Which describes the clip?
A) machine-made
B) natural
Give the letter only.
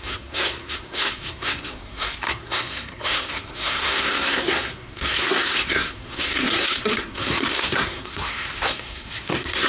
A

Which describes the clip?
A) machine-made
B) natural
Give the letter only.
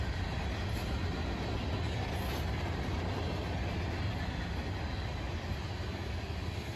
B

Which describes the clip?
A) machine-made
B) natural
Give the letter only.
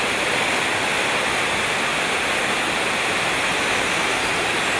B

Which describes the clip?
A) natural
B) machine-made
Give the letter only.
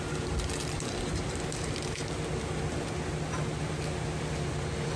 A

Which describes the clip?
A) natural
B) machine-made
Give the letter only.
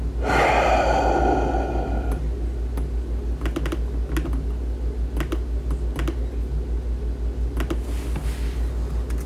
A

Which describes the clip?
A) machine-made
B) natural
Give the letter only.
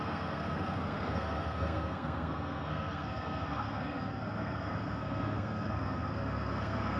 A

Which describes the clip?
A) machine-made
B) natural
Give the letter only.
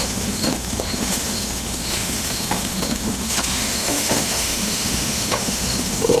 A